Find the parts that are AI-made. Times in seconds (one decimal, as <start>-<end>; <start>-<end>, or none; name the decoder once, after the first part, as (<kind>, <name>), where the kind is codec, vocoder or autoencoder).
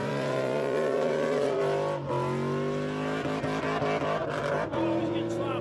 0.0-1.6 (vocoder, Vocos); 5.0-5.6